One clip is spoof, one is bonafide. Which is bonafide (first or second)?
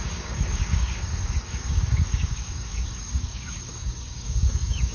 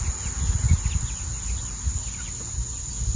second